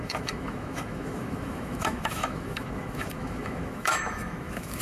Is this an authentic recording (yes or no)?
no